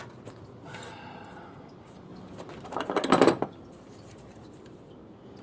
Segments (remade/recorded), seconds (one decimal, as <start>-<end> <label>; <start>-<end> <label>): 0.0-5.4 recorded

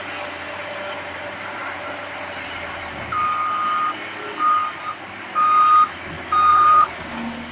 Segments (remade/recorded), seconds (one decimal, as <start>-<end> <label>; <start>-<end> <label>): 0.0-1.6 recorded; 1.6-2.8 remade; 2.8-6.5 recorded; 6.5-7.1 remade; 7.1-7.5 recorded